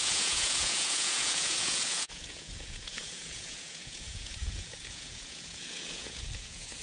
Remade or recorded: remade